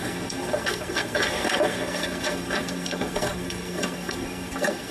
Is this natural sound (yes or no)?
no